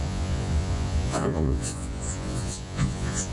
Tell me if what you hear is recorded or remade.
remade